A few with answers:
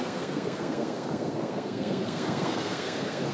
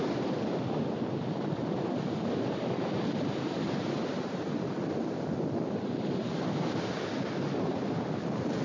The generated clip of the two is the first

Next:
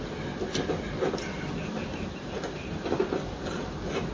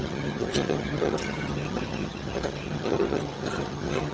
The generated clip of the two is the second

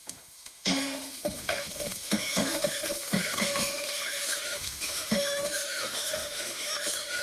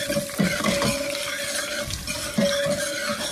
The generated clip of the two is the first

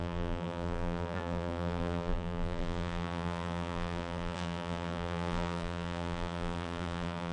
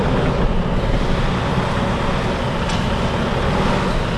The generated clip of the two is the first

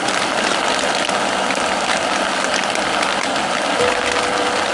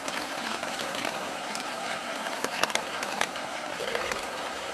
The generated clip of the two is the second